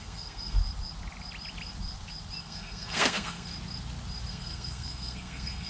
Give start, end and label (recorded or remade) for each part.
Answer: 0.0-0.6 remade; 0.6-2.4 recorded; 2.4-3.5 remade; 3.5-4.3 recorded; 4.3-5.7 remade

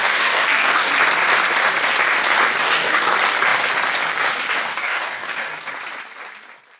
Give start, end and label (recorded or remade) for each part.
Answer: 0.0-0.9 remade; 0.9-2.6 recorded; 2.6-3.1 remade; 3.1-4.7 recorded; 4.7-5.7 remade; 5.7-6.8 recorded

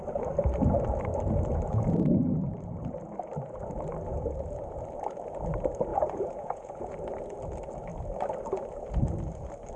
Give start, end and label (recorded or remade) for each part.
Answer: 0.0-5.9 recorded; 5.9-6.9 remade; 6.9-9.8 recorded

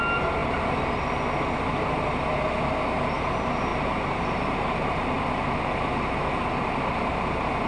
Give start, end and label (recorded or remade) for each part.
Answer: 0.0-3.7 recorded; 3.7-5.8 remade; 5.8-7.7 recorded

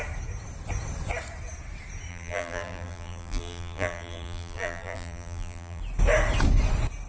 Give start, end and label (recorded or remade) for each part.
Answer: 0.0-2.1 recorded; 2.1-5.8 remade; 5.8-7.1 recorded